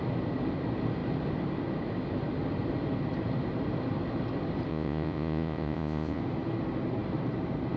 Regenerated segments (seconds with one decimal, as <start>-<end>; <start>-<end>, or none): 4.7-6.2